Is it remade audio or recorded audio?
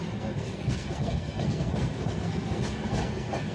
remade